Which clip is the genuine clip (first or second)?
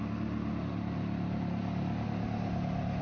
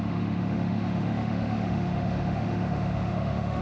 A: first